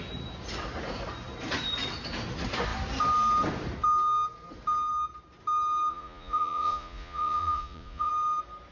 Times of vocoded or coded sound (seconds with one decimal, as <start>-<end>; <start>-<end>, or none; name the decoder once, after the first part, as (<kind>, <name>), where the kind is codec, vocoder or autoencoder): 5.9-8.1 (vocoder, Vocos)